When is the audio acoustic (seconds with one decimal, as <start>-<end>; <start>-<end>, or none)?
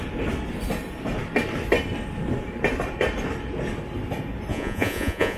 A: 0.0-4.5